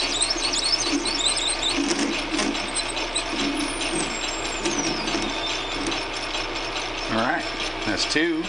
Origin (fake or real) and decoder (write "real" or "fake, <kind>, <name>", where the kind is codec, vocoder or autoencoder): real